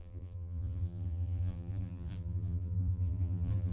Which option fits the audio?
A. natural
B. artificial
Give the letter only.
B